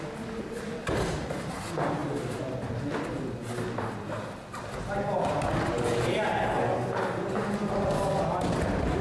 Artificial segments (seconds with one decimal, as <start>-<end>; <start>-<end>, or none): none